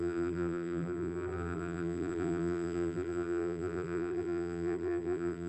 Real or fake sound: fake